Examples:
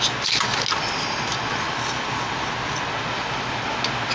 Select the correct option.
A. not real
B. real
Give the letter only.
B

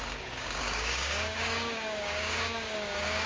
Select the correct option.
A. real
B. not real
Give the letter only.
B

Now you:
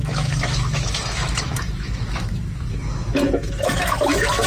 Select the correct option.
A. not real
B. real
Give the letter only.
A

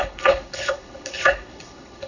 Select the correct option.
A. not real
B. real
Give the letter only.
A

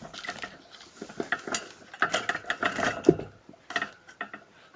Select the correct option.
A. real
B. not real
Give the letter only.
A